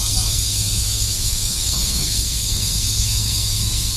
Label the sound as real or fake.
fake